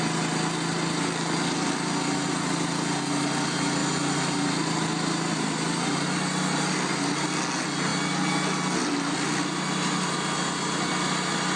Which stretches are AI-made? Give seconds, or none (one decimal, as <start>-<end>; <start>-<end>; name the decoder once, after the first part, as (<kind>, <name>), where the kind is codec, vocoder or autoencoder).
none